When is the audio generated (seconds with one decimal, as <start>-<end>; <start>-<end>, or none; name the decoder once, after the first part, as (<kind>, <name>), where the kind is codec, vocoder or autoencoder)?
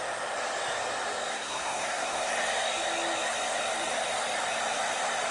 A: 1.3-2.3 (codec, SNAC)